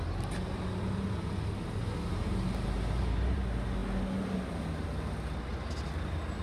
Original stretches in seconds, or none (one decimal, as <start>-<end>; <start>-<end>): 0.0-1.8; 3.4-6.4